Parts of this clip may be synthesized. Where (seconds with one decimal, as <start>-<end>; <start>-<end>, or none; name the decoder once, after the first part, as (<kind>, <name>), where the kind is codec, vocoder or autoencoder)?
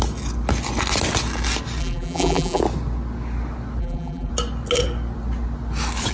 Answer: 1.8-2.6 (vocoder, BigVGAN v2); 3.8-4.3